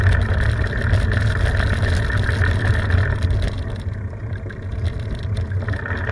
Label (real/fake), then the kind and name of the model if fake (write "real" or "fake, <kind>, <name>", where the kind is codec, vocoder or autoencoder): real